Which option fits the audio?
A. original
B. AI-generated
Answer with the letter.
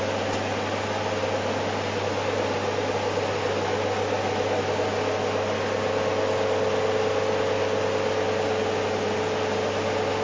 A